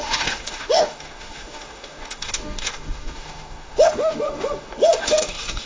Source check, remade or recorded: remade